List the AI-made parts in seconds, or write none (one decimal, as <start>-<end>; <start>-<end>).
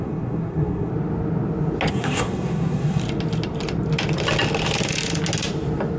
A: 0.0-0.9; 1.9-3.0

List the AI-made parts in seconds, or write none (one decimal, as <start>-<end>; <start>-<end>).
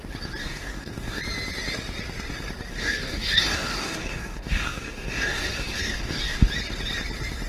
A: 0.4-1.2; 2.7-6.5